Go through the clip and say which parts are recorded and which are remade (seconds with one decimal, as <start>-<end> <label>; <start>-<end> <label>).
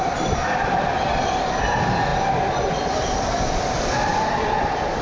0.0-5.0 recorded